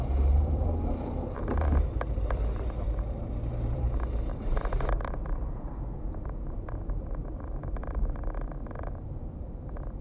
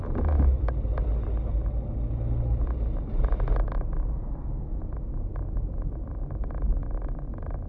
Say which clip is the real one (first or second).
second